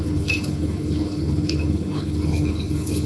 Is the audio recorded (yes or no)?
no